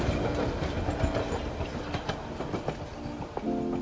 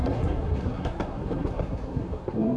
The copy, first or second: second